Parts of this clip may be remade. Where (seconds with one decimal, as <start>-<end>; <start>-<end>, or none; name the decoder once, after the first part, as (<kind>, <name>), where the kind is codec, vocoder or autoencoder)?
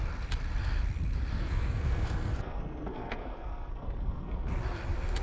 1.4-4.5 (codec, SNAC)